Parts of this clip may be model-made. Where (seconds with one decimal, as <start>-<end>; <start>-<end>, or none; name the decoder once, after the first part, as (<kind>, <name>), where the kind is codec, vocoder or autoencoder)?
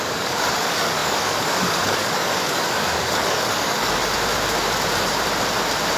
0.0-4.0 (codec, DAC)